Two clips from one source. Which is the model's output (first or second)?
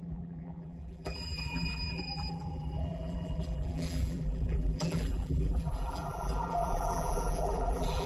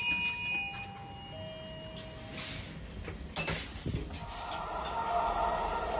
first